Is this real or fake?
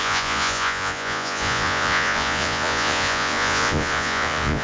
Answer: fake